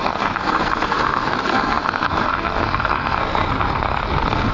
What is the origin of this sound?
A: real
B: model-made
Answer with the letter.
B